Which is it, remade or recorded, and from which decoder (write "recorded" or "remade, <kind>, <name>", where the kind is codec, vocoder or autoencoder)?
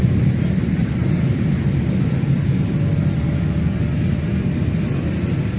recorded